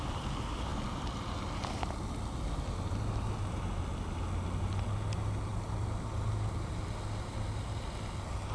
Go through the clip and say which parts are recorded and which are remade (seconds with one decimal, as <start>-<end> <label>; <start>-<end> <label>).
0.0-8.5 recorded